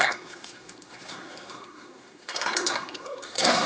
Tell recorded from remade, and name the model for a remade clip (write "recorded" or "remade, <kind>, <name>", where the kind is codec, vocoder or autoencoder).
remade, codec, SNAC